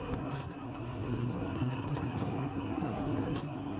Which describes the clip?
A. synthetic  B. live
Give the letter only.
A